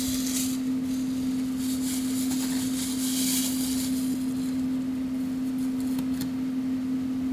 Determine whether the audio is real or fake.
real